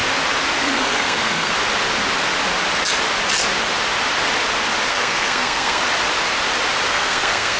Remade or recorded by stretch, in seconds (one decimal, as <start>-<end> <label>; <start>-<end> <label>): 0.0-0.6 recorded; 0.6-1.5 remade; 1.5-4.9 recorded; 4.9-5.8 remade; 5.8-6.9 recorded; 6.9-7.6 remade